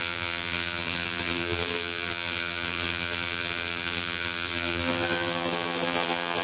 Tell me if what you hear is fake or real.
fake